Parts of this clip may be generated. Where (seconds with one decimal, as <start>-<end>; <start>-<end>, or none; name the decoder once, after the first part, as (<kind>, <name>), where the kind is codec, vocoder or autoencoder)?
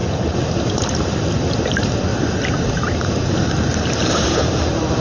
2.1-5.0 (vocoder, BigVGAN v2)